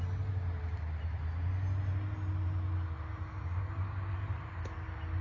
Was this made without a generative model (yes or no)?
yes